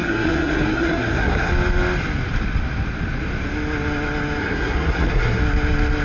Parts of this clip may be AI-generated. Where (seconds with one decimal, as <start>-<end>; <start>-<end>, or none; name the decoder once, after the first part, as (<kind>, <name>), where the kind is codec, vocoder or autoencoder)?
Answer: 0.0-1.5 (codec, SNAC); 4.4-5.4